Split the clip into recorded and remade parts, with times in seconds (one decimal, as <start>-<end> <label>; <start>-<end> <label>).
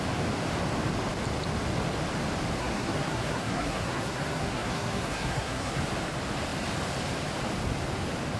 0.0-2.6 recorded; 2.6-5.8 remade; 5.8-8.4 recorded